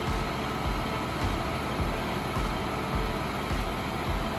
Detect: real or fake real